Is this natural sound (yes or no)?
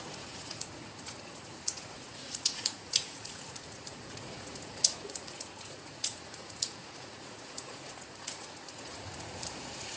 no